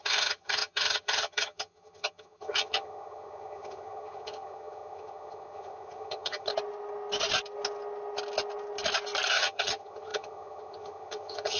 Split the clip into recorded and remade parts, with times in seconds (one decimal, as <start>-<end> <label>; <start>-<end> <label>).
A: 0.0-6.5 remade; 6.5-9.3 recorded; 9.3-11.6 remade